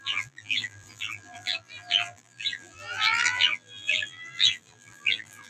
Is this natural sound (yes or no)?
no